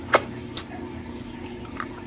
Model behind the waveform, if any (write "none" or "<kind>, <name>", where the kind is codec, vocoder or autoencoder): none